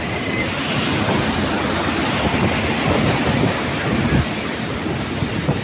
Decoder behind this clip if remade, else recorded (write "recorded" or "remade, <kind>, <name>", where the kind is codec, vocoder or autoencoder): recorded